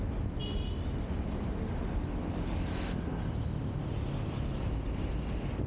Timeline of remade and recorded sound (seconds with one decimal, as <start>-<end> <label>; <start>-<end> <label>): 0.0-5.7 recorded